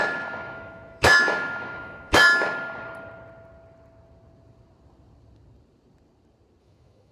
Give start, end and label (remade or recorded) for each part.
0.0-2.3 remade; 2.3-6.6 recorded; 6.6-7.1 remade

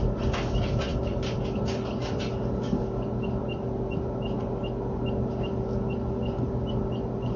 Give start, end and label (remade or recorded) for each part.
0.0-7.4 recorded

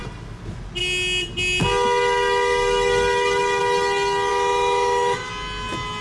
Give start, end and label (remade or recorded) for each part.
0.0-4.3 recorded; 4.3-5.3 remade; 5.3-6.0 recorded

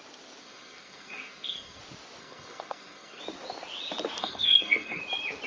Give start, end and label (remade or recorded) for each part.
0.0-0.4 recorded; 0.4-1.8 remade; 1.8-2.2 recorded; 2.2-3.2 remade; 3.2-4.2 recorded; 4.2-5.0 remade; 5.0-5.5 recorded

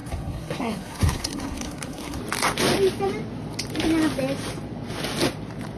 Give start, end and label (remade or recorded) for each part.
0.0-2.2 remade; 2.2-5.8 recorded

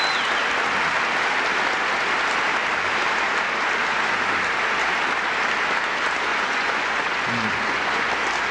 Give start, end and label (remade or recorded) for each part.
0.0-6.3 recorded; 6.3-8.1 remade; 8.1-8.5 recorded

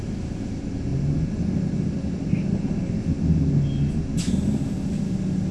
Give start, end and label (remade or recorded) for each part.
0.0-5.5 recorded

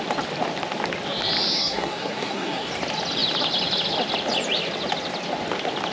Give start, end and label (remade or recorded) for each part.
0.0-1.6 recorded; 1.6-2.7 remade; 2.7-5.9 recorded